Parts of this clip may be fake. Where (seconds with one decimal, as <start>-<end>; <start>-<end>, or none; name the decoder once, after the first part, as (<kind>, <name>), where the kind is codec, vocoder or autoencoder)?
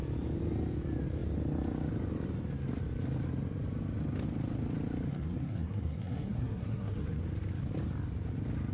5.1-7.2 (codec, SNAC)